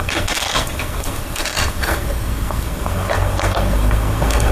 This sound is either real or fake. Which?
fake